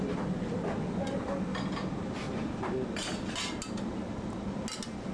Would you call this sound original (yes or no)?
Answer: yes